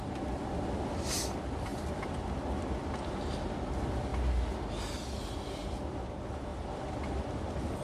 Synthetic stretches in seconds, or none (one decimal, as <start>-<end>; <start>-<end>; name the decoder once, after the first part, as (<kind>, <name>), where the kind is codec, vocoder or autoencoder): none